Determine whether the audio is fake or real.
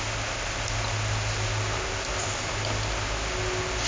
real